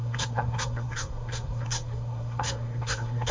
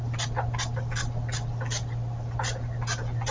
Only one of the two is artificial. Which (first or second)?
first